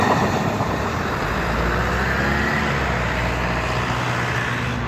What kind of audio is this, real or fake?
real